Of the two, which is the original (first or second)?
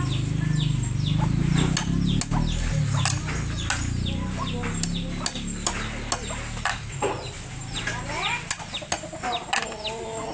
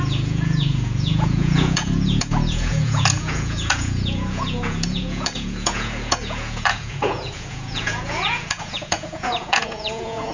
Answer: first